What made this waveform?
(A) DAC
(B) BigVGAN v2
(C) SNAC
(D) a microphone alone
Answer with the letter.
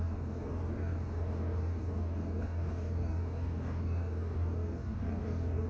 A